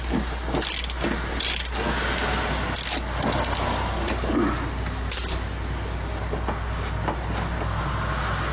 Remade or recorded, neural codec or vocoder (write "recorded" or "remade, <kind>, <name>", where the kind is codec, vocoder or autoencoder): recorded